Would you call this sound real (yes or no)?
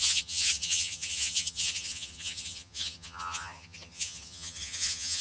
no